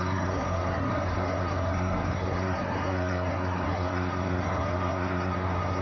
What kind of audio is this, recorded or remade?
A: remade